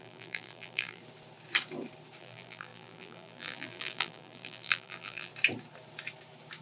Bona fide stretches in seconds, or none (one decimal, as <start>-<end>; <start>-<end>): 1.0-2.2; 5.3-6.6

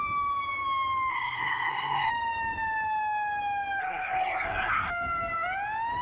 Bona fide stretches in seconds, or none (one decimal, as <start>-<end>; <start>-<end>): 0.0-1.1; 2.1-3.8; 4.9-6.0